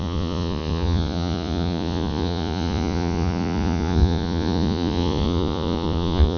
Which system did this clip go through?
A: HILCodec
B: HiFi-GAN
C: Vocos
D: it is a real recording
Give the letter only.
C